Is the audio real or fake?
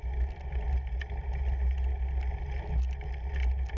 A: real